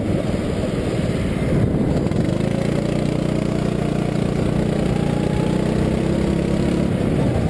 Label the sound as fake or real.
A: real